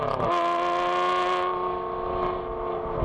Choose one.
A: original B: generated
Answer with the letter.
A